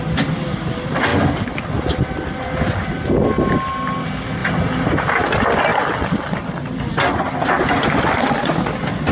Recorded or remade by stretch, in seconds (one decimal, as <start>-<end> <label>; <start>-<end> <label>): 0.0-9.1 recorded